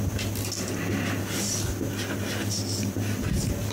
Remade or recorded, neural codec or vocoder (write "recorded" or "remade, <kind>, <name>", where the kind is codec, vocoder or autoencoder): recorded